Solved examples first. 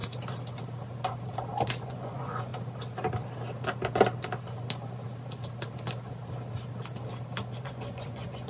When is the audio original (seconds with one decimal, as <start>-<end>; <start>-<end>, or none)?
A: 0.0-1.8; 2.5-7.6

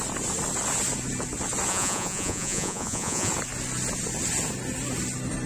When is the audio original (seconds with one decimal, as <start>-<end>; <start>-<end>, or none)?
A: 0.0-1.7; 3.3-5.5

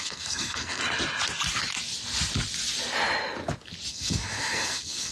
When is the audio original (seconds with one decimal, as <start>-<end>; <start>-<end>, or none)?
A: 0.8-3.9

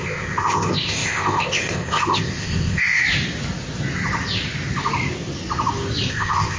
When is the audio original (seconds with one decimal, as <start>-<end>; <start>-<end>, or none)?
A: 3.0-6.1

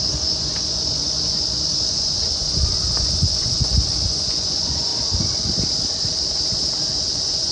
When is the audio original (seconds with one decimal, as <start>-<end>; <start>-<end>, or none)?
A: 4.9-7.0

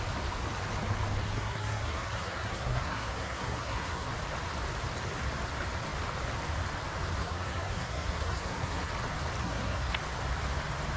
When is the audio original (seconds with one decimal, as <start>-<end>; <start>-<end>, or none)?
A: 0.0-1.2; 4.1-7.2; 8.9-9.4; 9.9-11.0